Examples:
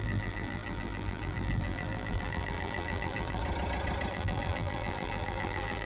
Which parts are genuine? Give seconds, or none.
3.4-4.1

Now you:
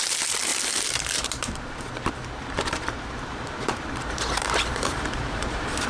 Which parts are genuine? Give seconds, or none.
none

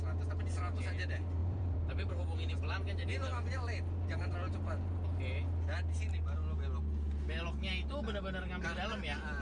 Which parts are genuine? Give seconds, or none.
0.0-1.4; 2.1-9.4

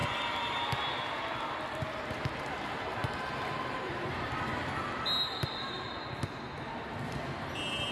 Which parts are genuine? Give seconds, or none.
0.0-7.9

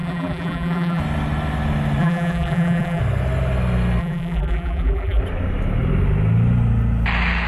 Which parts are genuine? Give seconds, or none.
1.0-2.0; 3.0-4.0; 5.2-7.5

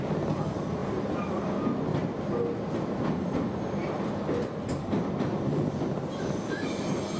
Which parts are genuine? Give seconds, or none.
0.0-7.2

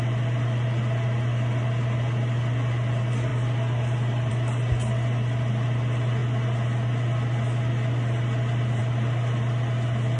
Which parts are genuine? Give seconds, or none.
0.0-10.2